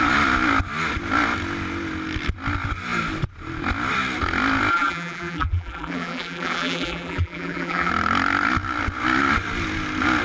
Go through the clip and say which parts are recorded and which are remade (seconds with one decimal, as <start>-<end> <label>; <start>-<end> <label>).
0.0-4.7 recorded; 4.7-7.9 remade; 7.9-10.2 recorded